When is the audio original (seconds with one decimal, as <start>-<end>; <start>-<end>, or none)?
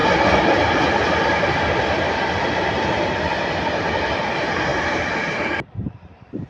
0.0-4.7